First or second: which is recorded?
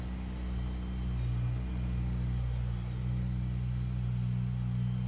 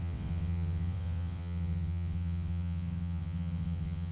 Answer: first